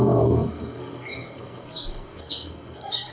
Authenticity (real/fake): fake